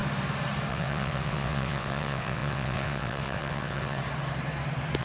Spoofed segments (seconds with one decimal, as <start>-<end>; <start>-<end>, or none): 0.7-4.0